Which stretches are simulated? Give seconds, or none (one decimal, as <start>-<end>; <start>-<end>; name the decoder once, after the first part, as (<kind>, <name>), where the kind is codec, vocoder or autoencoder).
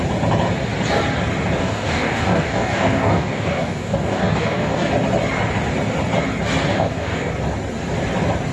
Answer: 1.6-4.9 (codec, DAC); 6.7-7.3